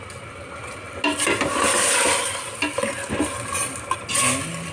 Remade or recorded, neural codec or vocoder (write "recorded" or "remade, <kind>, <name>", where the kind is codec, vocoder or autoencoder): recorded